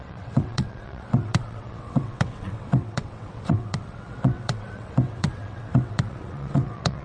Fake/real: fake